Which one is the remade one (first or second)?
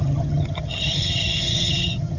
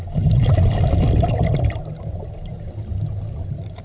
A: first